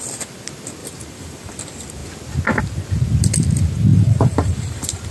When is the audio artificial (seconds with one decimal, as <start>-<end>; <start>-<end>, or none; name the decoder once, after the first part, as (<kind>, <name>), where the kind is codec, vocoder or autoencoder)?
0.8-1.5 (vocoder, BigVGAN v2); 3.9-5.1